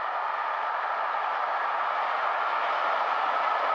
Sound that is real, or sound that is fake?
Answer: real